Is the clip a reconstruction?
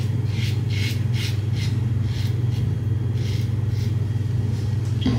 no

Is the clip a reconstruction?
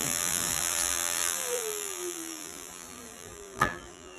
yes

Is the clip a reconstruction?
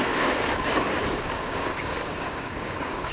yes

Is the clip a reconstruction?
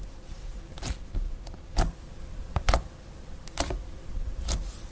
no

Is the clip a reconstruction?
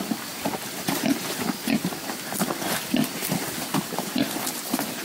no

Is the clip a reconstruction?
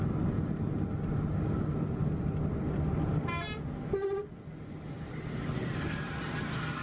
no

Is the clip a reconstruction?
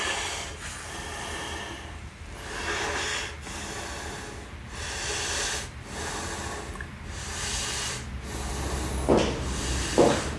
no